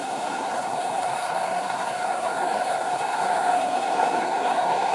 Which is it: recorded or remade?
remade